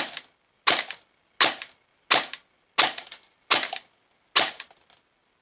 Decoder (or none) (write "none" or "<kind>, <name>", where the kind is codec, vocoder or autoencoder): none